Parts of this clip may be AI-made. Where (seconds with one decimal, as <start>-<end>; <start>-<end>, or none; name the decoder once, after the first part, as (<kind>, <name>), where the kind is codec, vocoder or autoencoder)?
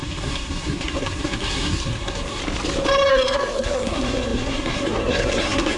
0.0-2.4 (codec, SNAC); 3.1-5.8